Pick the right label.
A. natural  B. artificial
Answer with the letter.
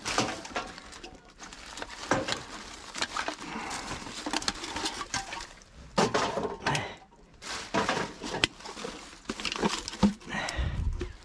B